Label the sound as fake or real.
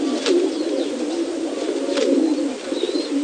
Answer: real